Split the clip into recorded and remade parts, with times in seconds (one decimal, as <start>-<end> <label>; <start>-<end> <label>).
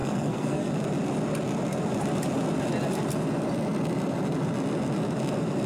0.0-0.7 remade; 0.7-5.7 recorded